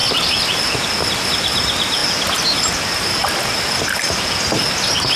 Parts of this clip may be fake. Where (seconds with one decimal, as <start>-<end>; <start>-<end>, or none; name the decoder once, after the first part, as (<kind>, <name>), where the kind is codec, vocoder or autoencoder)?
0.0-1.3 (vocoder, BigVGAN v2)